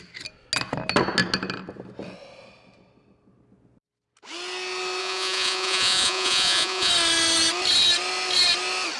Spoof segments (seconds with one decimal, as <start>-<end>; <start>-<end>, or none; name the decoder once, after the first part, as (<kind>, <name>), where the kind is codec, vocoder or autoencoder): 5.0-6.9 (vocoder, Vocos)